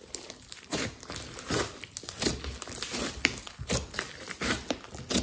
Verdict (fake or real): real